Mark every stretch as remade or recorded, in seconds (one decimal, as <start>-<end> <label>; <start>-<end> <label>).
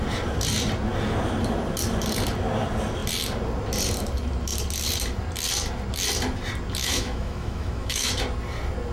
0.0-6.8 recorded; 6.8-8.1 remade; 8.1-8.9 recorded